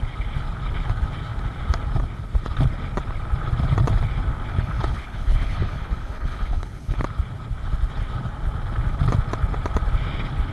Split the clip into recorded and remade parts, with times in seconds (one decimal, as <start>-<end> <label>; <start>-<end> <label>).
0.0-4.5 recorded; 4.5-7.0 remade; 7.0-10.5 recorded

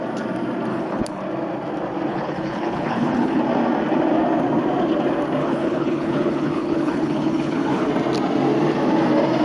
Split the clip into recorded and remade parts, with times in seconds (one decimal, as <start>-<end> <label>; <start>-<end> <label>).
0.0-0.7 recorded; 0.7-1.2 remade; 1.2-2.1 recorded; 2.1-3.4 remade; 3.4-5.4 recorded; 5.4-7.9 remade; 7.9-9.4 recorded

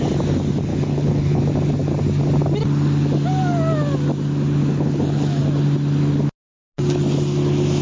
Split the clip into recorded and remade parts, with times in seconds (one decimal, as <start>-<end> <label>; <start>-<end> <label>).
0.0-0.7 recorded; 0.7-1.4 remade; 1.4-4.6 recorded; 4.6-5.4 remade; 5.4-7.8 recorded

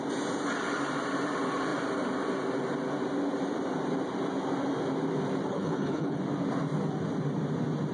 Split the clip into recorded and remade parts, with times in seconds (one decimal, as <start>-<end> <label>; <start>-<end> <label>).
0.0-5.5 recorded; 5.5-6.2 remade; 6.2-7.9 recorded